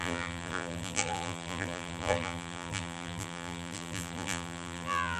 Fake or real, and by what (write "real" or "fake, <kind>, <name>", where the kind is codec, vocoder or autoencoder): fake, vocoder, BigVGAN v2